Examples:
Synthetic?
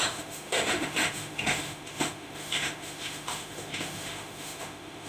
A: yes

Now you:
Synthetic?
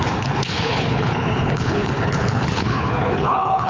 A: yes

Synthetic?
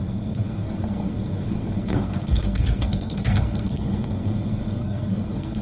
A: yes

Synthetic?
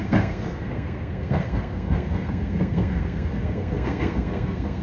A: yes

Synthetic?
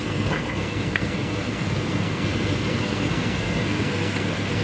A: yes